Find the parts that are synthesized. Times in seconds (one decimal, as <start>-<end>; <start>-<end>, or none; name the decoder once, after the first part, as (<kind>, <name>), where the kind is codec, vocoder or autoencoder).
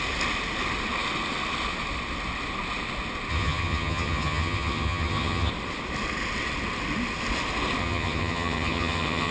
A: 3.3-5.5 (vocoder, HiFi-GAN); 7.8-9.3